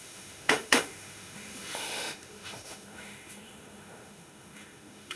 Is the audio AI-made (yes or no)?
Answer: yes